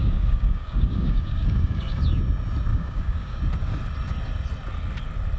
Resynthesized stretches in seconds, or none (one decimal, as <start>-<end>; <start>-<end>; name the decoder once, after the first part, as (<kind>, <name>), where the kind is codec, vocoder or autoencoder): 0.0-2.0 (codec, DAC); 2.7-3.4